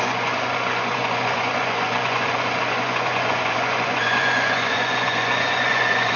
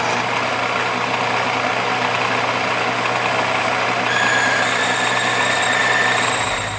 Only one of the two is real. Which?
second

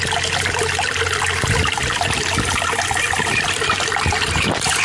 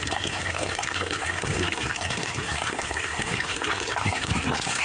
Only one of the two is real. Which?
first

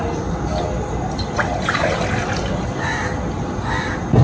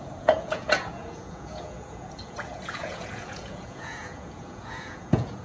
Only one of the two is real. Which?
first